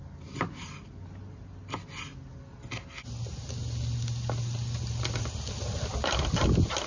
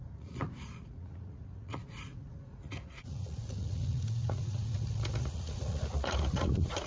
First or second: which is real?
first